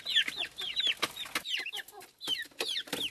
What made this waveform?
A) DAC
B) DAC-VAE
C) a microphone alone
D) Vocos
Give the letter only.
C